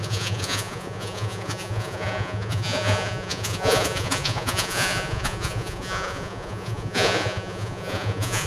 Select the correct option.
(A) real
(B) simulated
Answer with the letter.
B